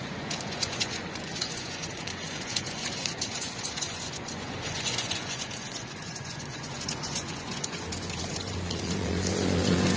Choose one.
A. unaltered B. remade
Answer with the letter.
B